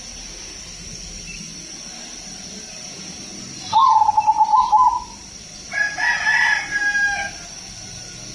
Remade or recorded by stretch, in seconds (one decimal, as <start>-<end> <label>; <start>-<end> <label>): 0.0-8.3 recorded